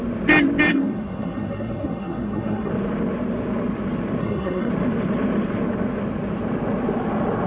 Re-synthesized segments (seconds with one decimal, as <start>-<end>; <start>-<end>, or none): 0.7-2.7; 4.2-4.7